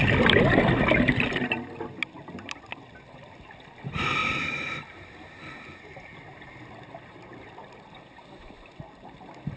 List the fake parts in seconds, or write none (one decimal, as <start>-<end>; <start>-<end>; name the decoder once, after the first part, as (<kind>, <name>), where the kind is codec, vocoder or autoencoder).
none